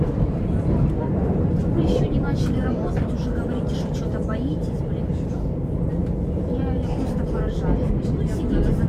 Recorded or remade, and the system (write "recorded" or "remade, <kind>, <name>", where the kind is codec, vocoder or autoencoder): remade, vocoder, BigVGAN v2